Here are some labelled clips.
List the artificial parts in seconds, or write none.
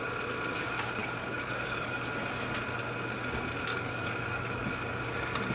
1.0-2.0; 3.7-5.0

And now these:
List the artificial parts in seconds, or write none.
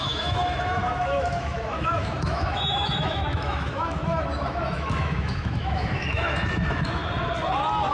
0.0-7.0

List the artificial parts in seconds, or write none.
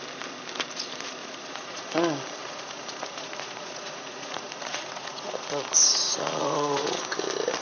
1.2-1.8; 2.4-7.0